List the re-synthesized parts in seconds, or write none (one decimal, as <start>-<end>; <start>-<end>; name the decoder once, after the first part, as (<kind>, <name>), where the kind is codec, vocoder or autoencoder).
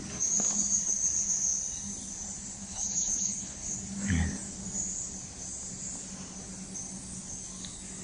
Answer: 2.6-3.7 (codec, HILCodec)